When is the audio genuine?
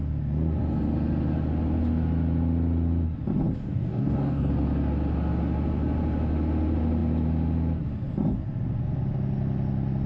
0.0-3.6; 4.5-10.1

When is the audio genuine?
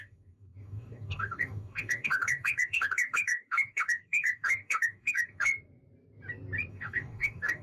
5.5-6.7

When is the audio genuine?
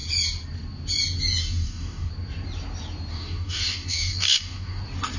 0.0-1.4; 2.1-3.1; 4.8-5.2